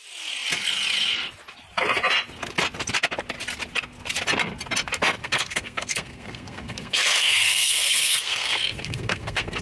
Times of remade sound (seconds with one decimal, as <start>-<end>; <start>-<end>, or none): 5.2-9.6